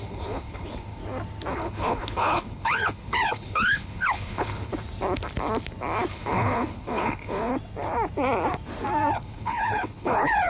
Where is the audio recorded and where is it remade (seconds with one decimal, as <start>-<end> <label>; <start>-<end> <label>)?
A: 0.0-1.0 remade; 1.0-1.5 recorded; 1.5-4.7 remade; 4.7-6.1 recorded; 6.1-7.5 remade; 7.5-9.1 recorded; 9.1-10.5 remade